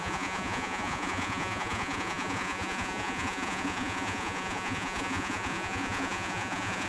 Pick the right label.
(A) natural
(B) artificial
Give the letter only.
B